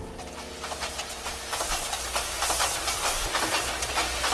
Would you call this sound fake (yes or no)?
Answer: no